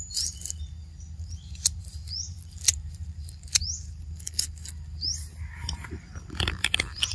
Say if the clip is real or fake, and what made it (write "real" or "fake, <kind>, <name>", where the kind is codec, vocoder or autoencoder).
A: real